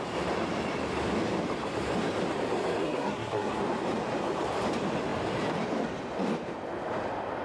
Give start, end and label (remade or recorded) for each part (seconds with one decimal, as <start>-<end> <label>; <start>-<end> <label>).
0.0-2.8 recorded; 2.8-3.6 remade; 3.6-7.4 recorded